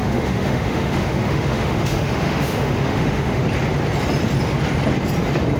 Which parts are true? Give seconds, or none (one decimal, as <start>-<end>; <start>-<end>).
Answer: 3.4-5.6